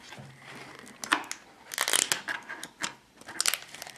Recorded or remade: recorded